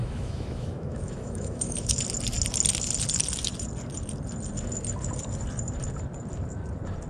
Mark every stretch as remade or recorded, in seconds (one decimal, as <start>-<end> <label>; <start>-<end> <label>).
0.0-2.0 remade; 2.0-7.1 recorded